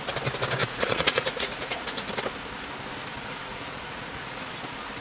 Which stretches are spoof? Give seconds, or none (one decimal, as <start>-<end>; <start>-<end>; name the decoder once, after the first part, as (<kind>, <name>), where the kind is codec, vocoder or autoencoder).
0.6-2.1 (vocoder, Vocos); 3.1-4.5